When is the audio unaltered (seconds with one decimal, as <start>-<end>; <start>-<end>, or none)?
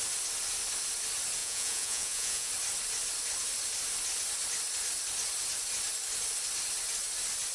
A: 0.0-1.4; 2.5-7.5